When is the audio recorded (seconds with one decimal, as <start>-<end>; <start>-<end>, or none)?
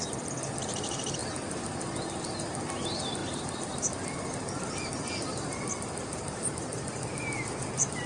none